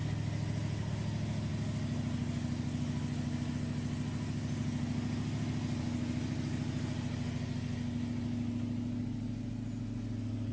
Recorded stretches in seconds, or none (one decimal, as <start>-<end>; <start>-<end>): 0.0-10.5